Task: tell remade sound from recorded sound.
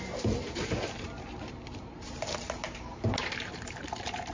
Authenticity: remade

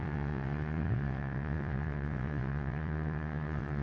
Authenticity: remade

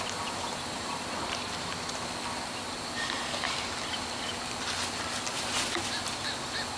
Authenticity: recorded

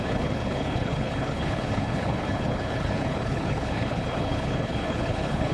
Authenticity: remade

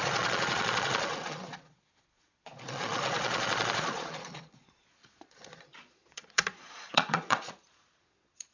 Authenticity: remade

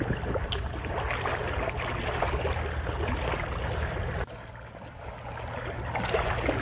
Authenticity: recorded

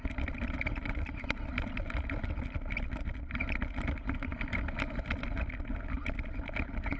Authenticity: recorded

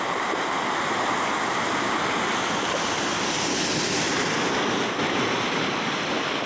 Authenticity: recorded